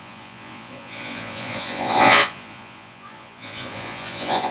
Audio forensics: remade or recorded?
remade